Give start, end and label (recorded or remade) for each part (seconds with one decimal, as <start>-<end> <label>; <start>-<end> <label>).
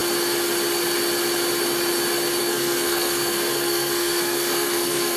0.0-2.4 recorded; 2.4-5.2 remade